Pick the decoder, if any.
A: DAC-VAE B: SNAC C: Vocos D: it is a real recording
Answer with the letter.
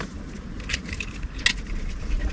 D